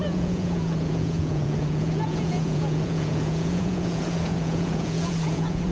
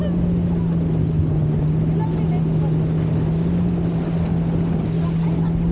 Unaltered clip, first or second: second